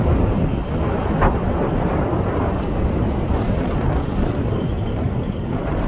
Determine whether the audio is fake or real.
fake